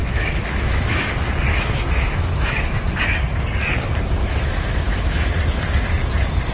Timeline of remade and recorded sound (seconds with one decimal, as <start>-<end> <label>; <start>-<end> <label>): 0.0-1.1 remade; 1.1-1.5 recorded; 1.5-3.0 remade; 3.0-4.2 recorded; 4.2-5.3 remade; 5.3-6.5 recorded